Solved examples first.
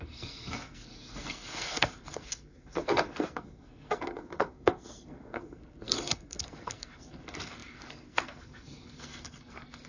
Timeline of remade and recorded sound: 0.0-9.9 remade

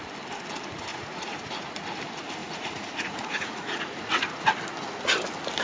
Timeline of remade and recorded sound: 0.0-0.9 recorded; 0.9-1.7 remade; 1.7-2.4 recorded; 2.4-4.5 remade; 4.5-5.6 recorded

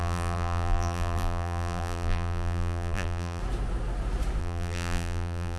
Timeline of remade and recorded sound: 0.0-3.4 remade; 3.4-4.4 recorded; 4.4-5.6 remade

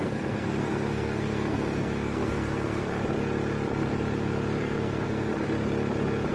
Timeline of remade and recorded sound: 0.0-3.0 remade; 3.0-4.6 recorded; 4.6-5.3 remade; 5.3-6.3 recorded